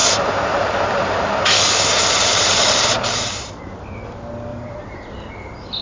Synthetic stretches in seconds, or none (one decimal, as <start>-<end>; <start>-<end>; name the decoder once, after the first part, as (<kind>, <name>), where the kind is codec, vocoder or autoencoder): 0.0-3.5 (vocoder, BigVGAN v2); 4.5-5.3